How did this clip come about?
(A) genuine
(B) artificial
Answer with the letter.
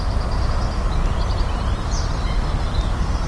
A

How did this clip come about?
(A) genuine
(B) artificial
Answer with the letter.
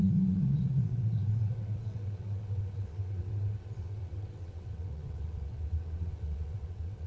B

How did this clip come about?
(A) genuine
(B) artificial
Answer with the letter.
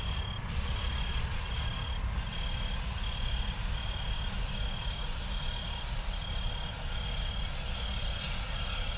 A